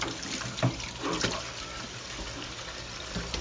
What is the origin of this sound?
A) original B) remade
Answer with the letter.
A